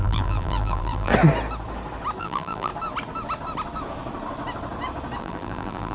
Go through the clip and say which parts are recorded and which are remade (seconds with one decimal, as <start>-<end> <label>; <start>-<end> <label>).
0.0-1.1 remade; 1.1-2.2 recorded; 2.2-2.7 remade; 2.7-5.2 recorded; 5.2-5.9 remade